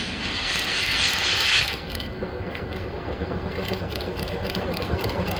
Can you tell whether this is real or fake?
fake